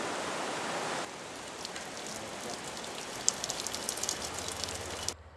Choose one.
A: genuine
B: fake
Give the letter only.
A